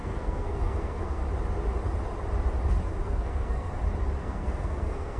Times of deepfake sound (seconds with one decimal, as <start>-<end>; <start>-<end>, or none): 0.0-1.2; 3.0-3.7; 4.2-5.2